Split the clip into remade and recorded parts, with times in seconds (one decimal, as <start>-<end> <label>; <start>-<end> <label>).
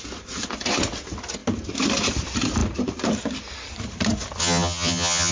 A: 0.0-4.4 recorded; 4.4-5.3 remade